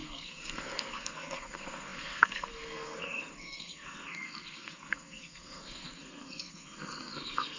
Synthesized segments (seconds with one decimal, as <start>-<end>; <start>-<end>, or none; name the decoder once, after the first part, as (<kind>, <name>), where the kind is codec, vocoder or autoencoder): 0.0-7.6 (codec, SNAC)